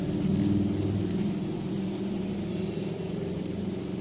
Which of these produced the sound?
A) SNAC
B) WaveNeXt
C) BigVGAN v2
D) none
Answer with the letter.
C